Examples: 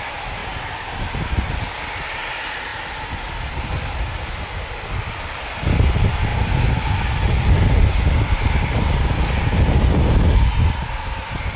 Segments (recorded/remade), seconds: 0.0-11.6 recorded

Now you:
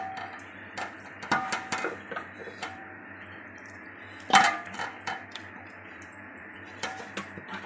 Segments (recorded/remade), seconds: 0.0-2.4 recorded; 2.4-7.0 remade; 7.0-7.7 recorded